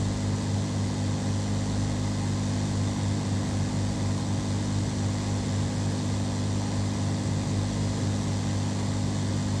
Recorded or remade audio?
recorded